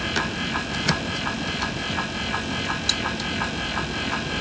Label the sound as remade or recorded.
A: recorded